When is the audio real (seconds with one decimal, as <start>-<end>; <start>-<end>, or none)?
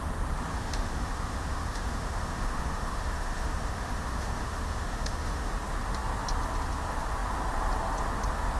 0.0-0.5; 5.5-8.6